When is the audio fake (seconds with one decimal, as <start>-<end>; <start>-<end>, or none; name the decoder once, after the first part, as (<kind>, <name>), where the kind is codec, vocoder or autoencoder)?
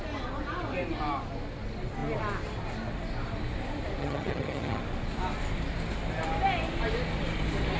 4.0-4.8 (vocoder, HiFi-GAN)